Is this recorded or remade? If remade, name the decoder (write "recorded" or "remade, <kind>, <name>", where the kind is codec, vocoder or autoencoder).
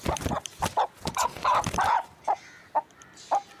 recorded